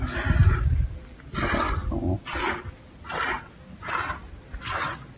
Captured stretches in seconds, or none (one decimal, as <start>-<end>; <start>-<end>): 0.0-5.2